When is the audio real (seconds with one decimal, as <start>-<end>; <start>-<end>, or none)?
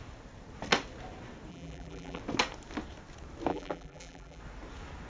0.0-1.5; 2.2-3.5; 4.4-5.1